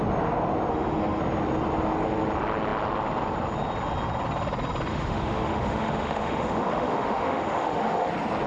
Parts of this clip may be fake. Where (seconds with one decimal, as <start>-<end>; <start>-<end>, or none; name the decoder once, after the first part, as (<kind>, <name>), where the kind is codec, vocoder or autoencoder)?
0.7-1.2 (autoencoder, DAC-VAE); 4.9-8.1